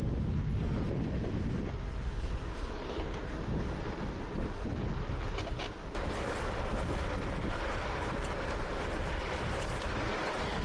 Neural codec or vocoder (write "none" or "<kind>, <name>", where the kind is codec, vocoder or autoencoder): none